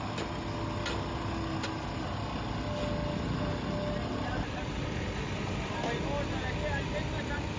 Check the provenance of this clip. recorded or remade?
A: recorded